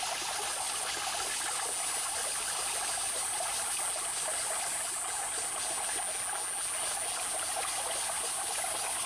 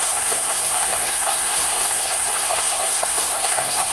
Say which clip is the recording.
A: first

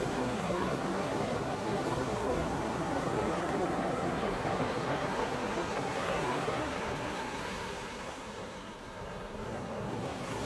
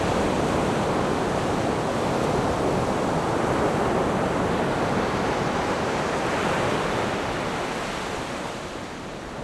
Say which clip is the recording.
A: second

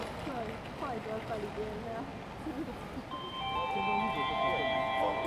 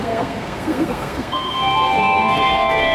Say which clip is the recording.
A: first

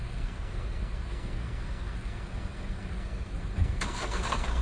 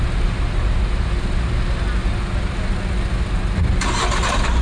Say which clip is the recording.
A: second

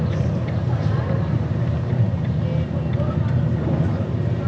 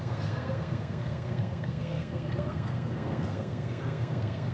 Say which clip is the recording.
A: first